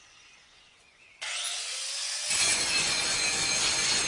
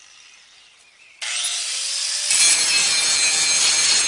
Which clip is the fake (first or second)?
first